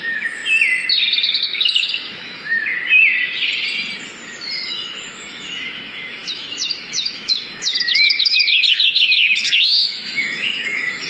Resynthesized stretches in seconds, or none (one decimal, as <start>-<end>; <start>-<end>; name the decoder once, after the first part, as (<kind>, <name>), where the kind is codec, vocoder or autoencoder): 0.0-0.4 (autoencoder, DAC-VAE); 1.4-2.7; 4.7-11.1